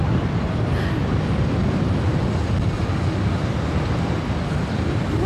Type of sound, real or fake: fake